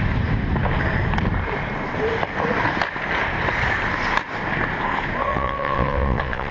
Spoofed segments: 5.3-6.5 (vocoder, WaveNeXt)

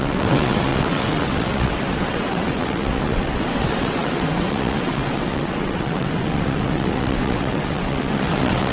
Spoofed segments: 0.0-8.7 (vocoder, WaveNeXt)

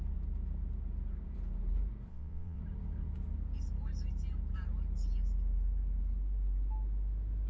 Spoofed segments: 2.1-2.6 (vocoder, WaveNeXt)